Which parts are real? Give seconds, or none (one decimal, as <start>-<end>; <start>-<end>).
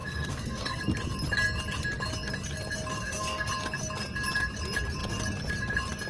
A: 0.8-2.9; 3.5-6.1